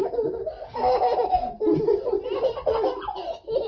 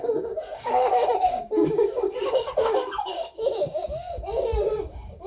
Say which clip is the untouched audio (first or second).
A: first